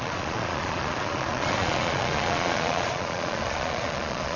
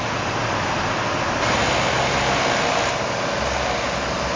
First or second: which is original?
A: second